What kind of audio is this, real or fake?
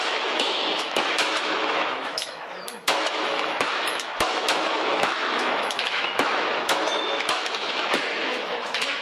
fake